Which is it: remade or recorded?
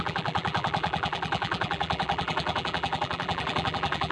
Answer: remade